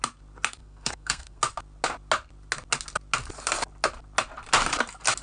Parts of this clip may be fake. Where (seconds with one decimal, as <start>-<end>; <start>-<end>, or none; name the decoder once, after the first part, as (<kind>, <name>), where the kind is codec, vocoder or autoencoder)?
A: 0.6-1.4 (codec, SNAC)